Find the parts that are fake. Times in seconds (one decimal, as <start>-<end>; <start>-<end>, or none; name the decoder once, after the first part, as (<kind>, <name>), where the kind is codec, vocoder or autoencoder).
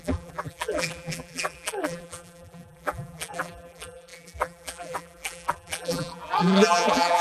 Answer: 0.0-7.2 (vocoder, BigVGAN v2)